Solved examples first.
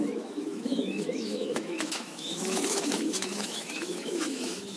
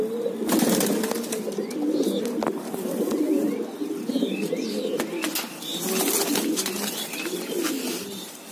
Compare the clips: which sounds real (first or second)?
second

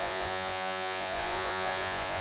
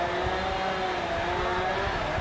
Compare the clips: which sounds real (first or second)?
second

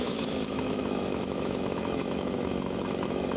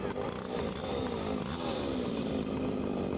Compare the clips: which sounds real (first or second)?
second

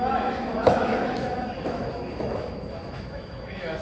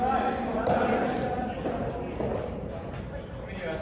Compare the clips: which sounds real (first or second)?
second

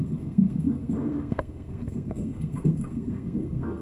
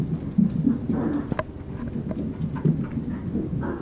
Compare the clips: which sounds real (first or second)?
second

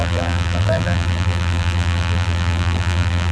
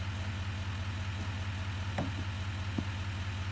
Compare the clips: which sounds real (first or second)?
second